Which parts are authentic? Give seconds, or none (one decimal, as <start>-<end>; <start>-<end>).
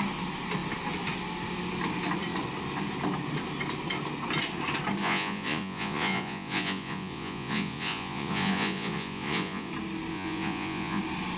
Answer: 0.0-5.0; 9.7-10.1; 11.0-11.4